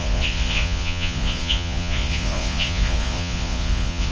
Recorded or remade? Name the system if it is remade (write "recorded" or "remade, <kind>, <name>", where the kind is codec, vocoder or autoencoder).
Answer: remade, vocoder, Vocos